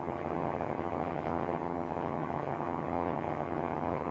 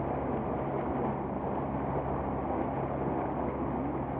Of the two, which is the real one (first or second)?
second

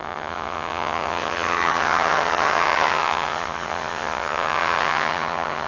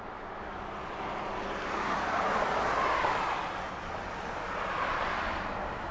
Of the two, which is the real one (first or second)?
second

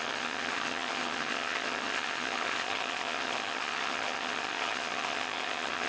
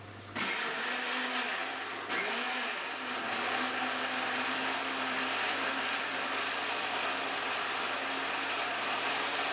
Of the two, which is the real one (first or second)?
second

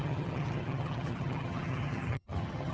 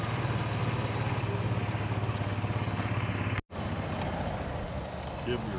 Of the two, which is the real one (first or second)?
second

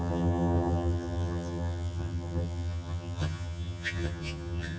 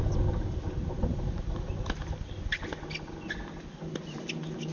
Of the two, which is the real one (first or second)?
second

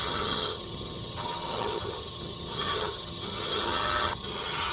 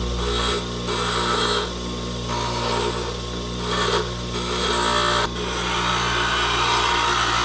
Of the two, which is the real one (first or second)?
second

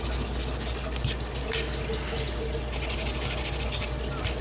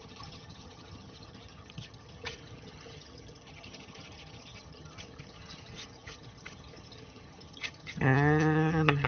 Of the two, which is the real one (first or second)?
first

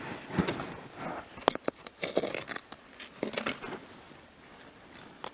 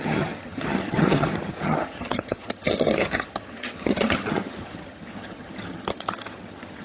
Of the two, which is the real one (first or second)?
first